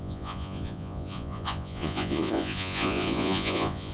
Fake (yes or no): yes